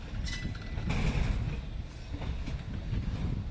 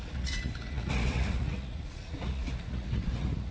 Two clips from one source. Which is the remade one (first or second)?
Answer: second